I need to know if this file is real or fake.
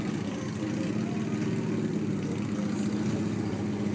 real